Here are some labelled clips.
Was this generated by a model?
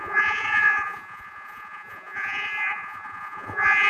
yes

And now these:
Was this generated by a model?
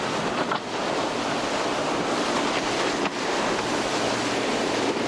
no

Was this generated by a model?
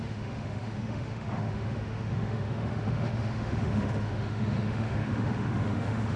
yes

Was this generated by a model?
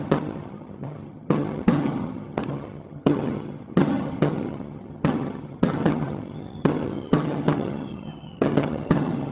yes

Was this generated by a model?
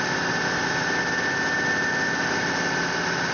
no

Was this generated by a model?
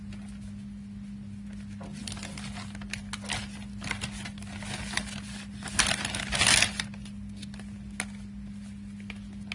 no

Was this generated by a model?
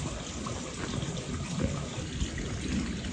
no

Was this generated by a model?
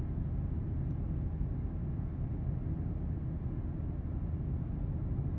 no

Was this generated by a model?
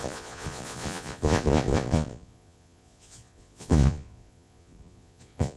yes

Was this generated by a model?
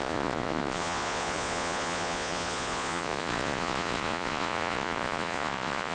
yes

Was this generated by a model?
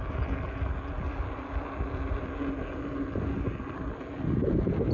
no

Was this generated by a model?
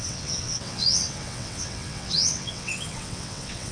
yes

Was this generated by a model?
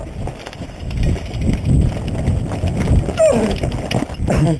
no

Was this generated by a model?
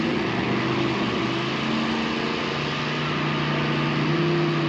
no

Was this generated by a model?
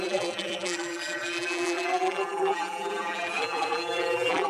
yes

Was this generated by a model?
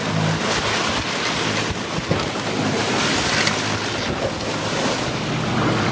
no